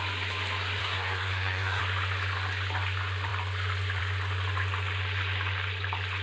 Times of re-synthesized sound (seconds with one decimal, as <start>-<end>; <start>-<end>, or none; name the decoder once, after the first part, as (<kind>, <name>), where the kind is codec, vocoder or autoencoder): 0.8-1.8 (codec, SNAC)